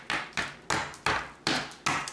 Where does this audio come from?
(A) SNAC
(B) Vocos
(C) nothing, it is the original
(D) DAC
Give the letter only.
C